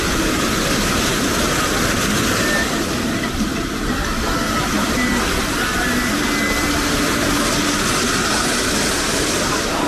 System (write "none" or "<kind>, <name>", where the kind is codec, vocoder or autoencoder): none